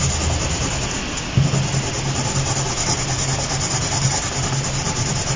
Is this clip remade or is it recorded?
recorded